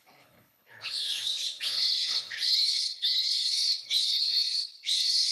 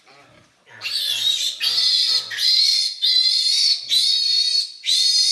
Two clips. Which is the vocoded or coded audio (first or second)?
first